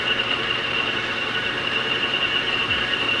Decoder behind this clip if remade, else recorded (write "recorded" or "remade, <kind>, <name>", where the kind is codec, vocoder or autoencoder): remade, vocoder, BigVGAN v2